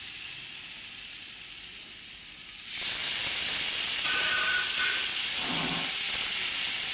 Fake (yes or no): no